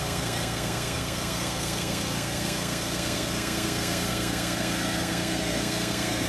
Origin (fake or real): fake